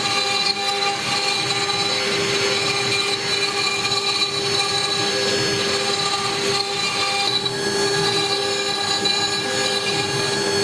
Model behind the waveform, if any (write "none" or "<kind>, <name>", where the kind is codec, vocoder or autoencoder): none